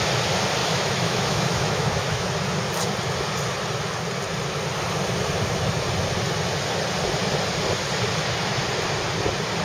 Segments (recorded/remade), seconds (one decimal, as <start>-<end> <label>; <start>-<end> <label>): 0.0-0.6 recorded; 0.6-2.3 remade; 2.3-9.6 recorded